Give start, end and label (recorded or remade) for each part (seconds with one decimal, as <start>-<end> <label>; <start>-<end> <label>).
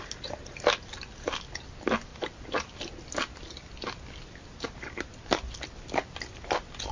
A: 0.0-2.1 recorded; 2.1-2.8 remade; 2.8-6.9 recorded